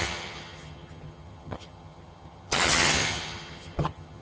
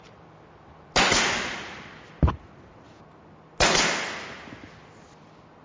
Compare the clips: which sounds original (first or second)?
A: second